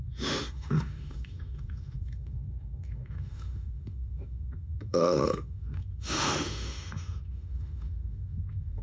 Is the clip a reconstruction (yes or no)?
yes